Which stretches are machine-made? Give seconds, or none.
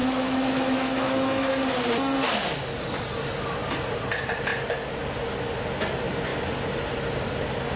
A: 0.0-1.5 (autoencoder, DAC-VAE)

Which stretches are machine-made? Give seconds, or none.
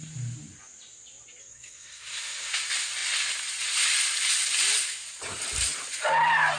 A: 1.4-2.5 (codec, SNAC)